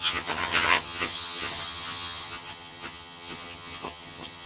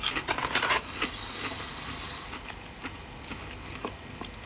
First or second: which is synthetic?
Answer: first